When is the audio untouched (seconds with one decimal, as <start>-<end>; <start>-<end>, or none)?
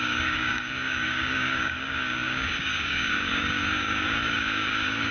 none